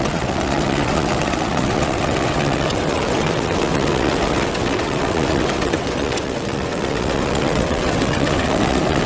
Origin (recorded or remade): remade